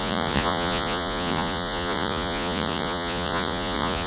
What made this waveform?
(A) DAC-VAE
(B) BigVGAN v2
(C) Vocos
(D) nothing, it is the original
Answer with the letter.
C